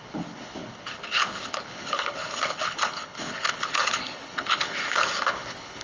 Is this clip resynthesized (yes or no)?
yes